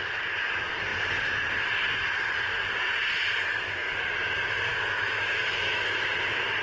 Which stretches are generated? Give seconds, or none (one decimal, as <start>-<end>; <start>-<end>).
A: 4.7-6.1